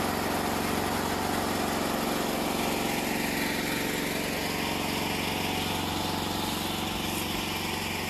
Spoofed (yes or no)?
no